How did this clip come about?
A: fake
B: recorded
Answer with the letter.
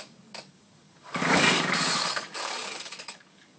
A